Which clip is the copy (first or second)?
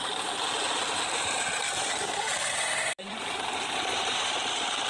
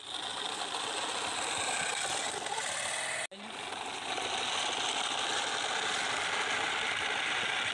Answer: first